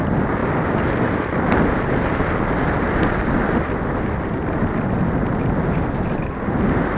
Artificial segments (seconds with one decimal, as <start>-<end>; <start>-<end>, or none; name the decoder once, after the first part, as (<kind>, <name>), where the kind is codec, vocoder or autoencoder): none